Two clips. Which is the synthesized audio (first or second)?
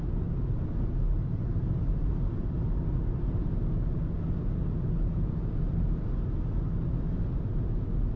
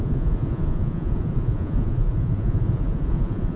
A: second